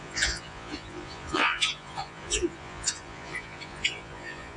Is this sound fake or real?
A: fake